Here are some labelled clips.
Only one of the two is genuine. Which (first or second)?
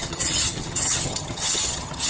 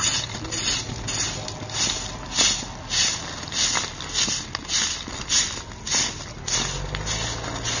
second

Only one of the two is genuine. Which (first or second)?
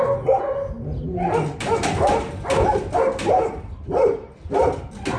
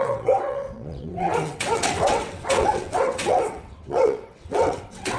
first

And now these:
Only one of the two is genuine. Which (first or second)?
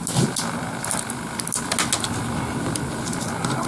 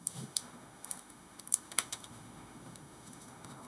first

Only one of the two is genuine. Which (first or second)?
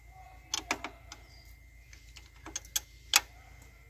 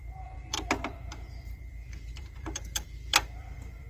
first